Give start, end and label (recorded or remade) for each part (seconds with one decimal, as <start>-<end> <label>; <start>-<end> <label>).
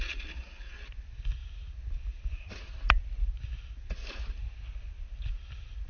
0.0-5.9 recorded